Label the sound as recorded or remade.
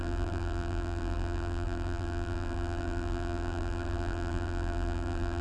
remade